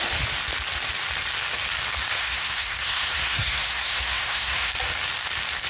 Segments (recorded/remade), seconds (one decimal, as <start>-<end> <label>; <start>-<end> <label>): 0.0-2.1 recorded; 2.1-4.7 remade; 4.7-5.7 recorded